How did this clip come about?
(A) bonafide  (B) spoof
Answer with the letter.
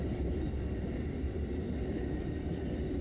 A